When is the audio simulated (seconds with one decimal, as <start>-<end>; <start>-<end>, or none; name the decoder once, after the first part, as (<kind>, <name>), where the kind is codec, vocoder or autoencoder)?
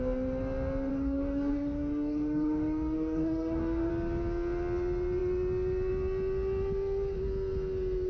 0.9-3.9 (codec, DAC)